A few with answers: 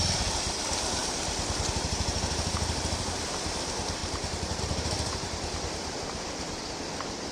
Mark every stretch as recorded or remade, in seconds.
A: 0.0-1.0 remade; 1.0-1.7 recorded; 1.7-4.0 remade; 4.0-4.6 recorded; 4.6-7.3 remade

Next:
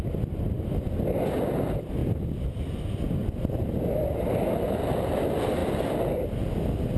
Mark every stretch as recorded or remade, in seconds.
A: 0.0-7.0 recorded

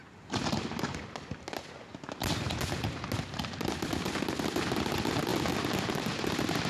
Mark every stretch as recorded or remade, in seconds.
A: 0.0-5.3 recorded; 5.3-6.1 remade; 6.1-6.7 recorded

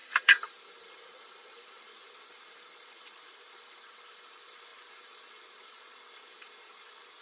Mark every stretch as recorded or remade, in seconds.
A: 0.0-7.2 remade

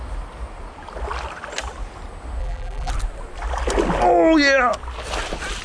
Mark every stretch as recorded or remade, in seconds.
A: 0.0-2.4 recorded; 2.4-2.9 remade; 2.9-5.6 recorded

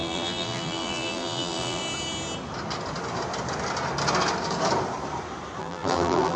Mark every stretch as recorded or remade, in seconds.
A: 0.0-1.8 remade; 1.8-5.6 recorded; 5.6-6.4 remade